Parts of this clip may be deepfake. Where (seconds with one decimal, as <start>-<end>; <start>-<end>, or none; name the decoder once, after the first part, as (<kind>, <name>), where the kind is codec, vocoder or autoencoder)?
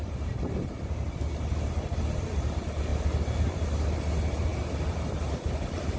none